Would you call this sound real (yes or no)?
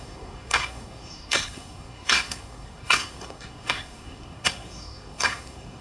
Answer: no